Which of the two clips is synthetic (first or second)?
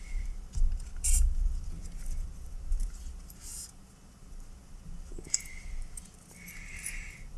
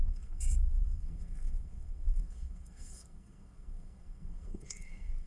second